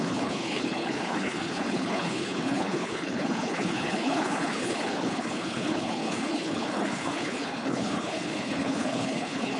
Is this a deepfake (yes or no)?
yes